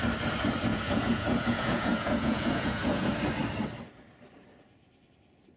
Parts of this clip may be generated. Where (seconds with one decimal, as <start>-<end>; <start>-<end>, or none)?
0.7-3.1